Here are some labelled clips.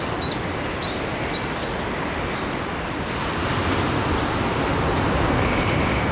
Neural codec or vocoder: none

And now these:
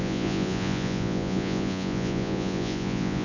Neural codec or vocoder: vocoder, Vocos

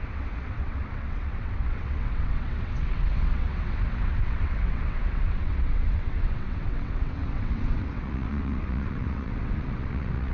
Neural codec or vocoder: vocoder, WaveNeXt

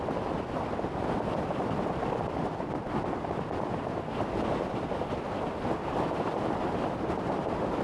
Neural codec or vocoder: none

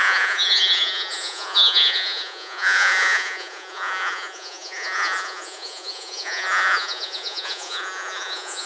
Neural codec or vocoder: vocoder, Vocos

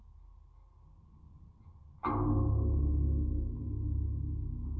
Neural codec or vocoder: none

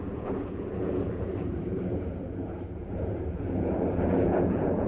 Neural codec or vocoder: vocoder, Vocos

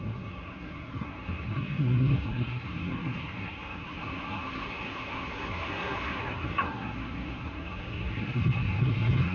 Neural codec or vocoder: codec, SNAC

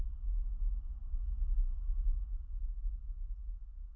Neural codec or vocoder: none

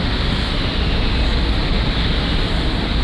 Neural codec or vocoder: none